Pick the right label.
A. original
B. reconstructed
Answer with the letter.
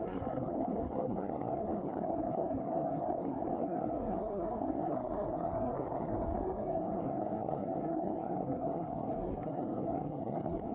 B